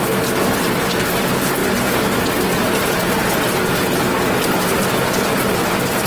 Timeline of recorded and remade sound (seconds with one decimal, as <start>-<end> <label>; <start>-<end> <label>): 0.0-6.1 recorded